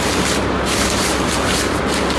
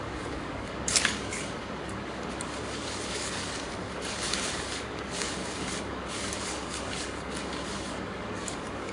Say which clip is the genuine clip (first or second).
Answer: first